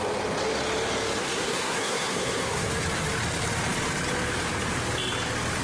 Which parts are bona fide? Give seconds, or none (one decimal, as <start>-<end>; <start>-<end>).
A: 0.0-1.2; 2.7-5.6